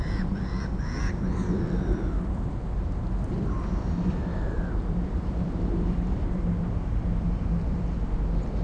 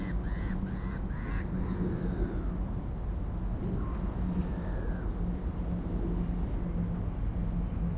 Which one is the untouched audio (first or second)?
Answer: second